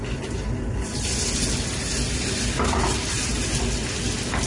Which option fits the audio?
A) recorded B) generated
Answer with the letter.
A